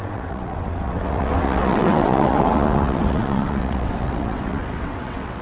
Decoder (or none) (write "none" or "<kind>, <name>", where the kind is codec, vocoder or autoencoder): vocoder, WaveNeXt